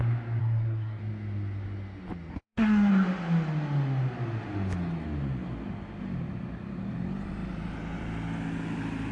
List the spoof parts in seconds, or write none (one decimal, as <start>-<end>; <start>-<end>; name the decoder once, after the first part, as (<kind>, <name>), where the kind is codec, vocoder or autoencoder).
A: 0.4-1.0 (codec, SNAC); 2.3-2.9